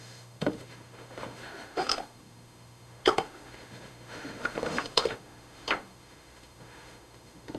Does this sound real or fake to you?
fake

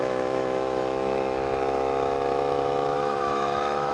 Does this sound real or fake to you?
fake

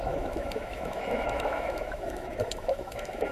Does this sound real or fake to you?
fake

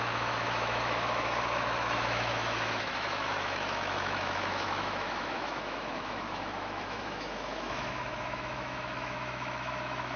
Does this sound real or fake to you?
fake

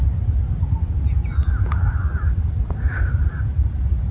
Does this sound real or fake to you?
real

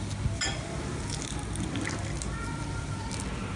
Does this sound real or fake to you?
real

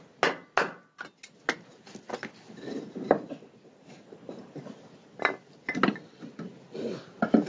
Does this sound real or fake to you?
real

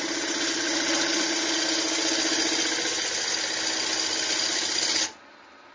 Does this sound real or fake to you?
real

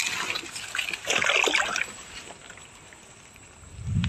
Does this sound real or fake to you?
real